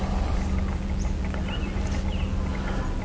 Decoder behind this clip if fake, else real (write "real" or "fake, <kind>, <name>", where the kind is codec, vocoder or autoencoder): real